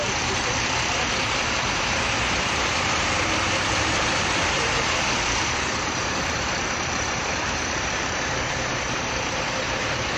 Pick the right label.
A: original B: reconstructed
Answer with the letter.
B